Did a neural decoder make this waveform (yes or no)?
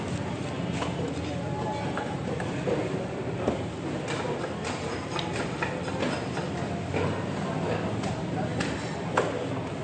no